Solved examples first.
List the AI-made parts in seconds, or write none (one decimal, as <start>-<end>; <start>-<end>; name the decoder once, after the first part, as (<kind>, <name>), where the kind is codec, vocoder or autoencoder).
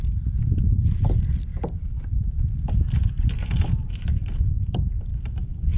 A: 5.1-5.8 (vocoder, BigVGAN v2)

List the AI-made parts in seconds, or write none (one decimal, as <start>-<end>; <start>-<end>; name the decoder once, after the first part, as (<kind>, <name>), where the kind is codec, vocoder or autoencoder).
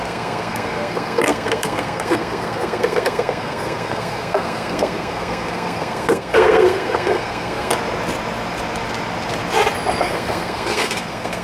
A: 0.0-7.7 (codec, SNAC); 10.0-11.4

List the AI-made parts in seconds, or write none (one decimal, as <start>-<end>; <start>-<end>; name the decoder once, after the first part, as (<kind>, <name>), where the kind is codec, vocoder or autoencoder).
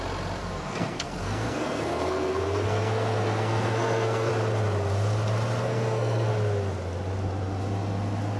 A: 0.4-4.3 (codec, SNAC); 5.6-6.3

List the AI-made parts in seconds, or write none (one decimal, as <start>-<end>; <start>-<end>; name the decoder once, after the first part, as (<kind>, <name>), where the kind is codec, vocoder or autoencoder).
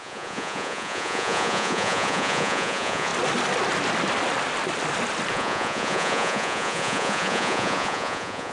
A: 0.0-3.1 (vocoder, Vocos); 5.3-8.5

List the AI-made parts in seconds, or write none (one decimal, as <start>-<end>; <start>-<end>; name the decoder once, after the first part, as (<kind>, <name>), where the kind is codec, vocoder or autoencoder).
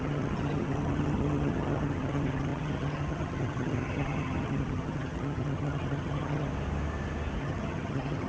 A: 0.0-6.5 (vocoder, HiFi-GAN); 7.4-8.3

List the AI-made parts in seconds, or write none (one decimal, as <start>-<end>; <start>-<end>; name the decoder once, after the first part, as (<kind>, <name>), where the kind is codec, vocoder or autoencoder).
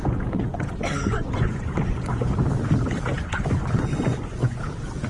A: 0.0-2.3 (vocoder, Vocos); 3.1-4.6